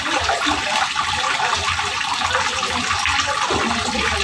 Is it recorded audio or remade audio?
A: recorded